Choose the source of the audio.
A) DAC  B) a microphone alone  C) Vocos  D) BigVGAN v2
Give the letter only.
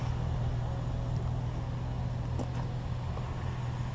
B